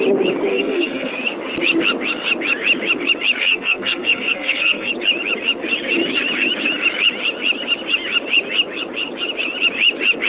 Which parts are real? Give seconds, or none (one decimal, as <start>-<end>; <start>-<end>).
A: 0.0-0.5; 1.1-3.4; 4.9-10.3